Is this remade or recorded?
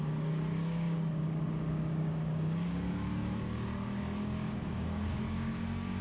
remade